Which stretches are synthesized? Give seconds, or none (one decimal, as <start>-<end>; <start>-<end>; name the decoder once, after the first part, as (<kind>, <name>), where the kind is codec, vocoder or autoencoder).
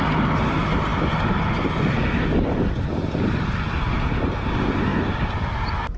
none